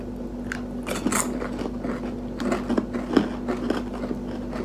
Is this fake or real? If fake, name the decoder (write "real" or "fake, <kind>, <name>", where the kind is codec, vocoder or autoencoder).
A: real